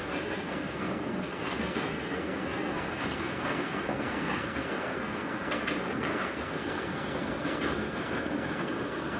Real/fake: fake